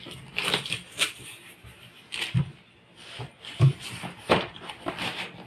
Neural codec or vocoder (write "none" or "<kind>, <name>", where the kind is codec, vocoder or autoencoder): vocoder, BigVGAN v2